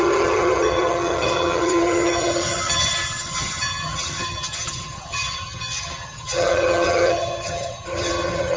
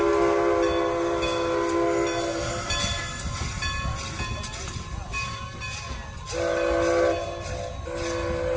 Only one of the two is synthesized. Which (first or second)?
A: first